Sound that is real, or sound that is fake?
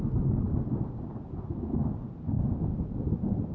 real